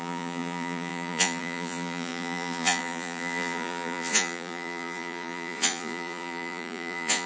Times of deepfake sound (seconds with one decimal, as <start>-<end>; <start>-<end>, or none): 0.0-7.3